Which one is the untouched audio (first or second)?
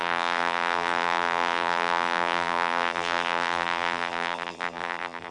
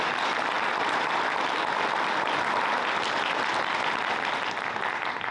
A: second